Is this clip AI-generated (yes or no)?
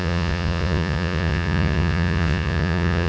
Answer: yes